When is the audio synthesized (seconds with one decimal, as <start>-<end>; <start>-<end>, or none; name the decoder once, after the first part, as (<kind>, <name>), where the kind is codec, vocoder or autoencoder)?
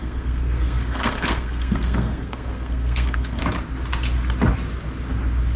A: 0.0-3.4 (codec, SNAC)